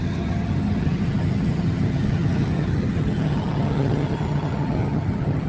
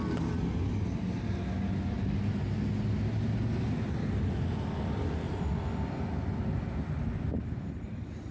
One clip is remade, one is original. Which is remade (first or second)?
first